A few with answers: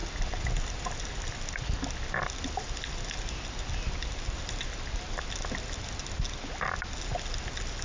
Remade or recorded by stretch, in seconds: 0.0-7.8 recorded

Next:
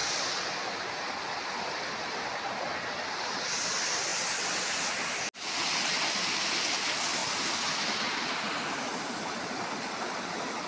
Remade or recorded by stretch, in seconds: 0.0-10.7 recorded

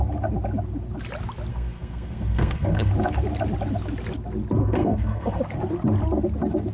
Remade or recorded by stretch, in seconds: 0.0-1.5 recorded; 1.5-2.9 remade; 2.9-4.6 recorded; 4.6-5.4 remade; 5.4-6.7 recorded

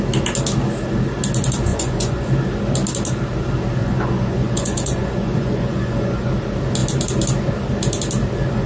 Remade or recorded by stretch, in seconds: 0.0-1.7 recorded; 1.7-2.3 remade; 2.3-3.8 recorded; 3.8-6.3 remade; 6.3-8.7 recorded

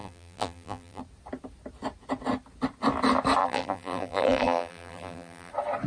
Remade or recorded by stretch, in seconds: 0.0-1.0 remade; 1.0-3.4 recorded; 3.4-5.5 remade; 5.5-5.9 recorded

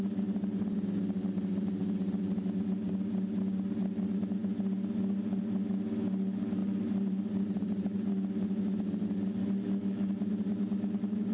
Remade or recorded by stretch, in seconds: 0.0-6.6 recorded; 6.6-8.1 remade; 8.1-11.3 recorded

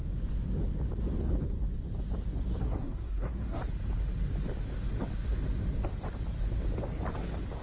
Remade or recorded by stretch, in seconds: 0.0-2.6 recorded; 2.6-3.6 remade; 3.6-7.6 recorded